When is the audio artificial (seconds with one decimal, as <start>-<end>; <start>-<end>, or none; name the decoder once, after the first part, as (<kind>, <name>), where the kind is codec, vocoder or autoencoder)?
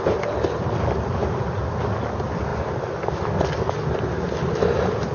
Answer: none